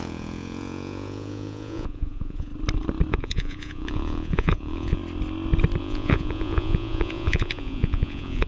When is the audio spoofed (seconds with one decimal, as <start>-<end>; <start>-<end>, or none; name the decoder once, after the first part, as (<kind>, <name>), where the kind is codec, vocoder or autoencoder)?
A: 0.0-2.5 (vocoder, Vocos); 3.1-5.0; 5.8-8.5

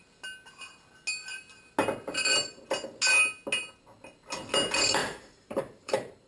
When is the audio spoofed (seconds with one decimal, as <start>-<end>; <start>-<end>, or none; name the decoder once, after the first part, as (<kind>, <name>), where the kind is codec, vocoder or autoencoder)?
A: 5.0-6.3 (vocoder, BigVGAN v2)